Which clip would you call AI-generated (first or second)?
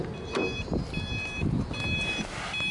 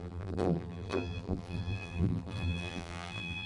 second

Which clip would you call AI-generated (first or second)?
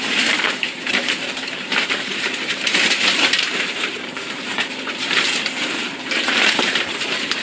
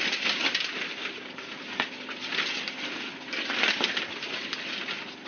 first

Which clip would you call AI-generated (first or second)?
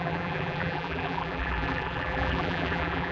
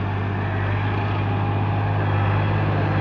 first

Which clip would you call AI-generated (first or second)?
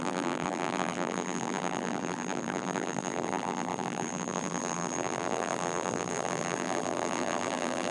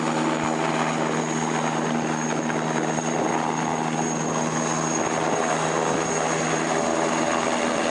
first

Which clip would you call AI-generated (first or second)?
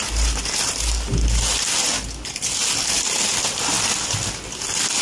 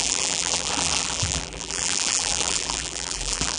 second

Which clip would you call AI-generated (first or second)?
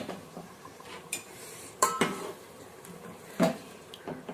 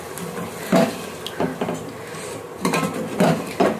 first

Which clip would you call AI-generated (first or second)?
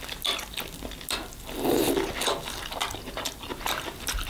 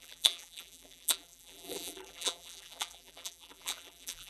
second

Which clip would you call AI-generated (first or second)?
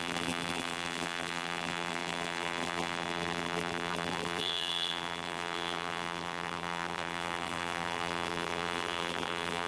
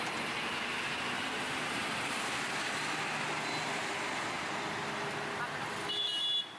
first